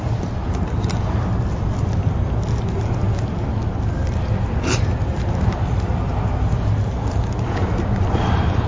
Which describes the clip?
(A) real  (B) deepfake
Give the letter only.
A